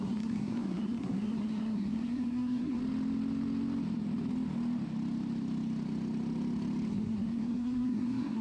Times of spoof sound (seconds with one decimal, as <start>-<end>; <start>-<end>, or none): 0.0-2.8; 6.9-8.4